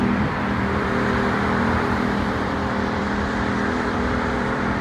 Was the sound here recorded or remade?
remade